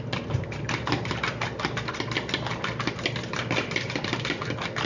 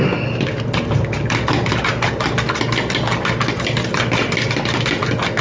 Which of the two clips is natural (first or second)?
second